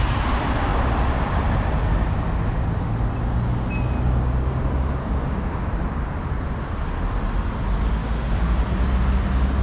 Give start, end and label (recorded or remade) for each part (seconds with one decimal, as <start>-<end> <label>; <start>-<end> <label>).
0.0-8.0 recorded; 8.0-8.6 remade; 8.6-9.6 recorded